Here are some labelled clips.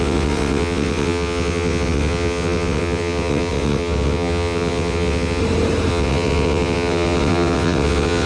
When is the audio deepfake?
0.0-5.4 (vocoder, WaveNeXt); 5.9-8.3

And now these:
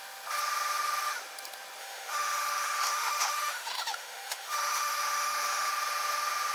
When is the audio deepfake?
1.8-5.7 (autoencoder, DAC-VAE)

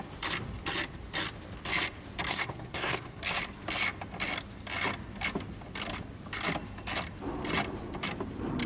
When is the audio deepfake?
2.3-3.2 (codec, SNAC)

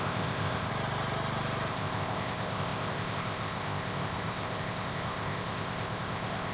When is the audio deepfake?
0.0-0.7 (codec, ZipCodec); 1.7-6.5

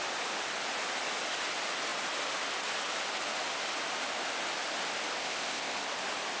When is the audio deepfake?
5.2-5.8 (codec, ZipCodec)

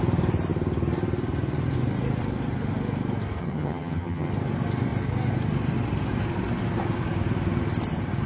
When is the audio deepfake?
3.4-4.3 (vocoder, HiFi-GAN)